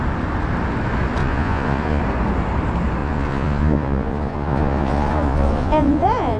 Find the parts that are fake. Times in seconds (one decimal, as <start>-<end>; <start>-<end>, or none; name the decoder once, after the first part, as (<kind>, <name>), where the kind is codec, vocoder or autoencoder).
1.2-2.0 (vocoder, Vocos); 3.0-6.4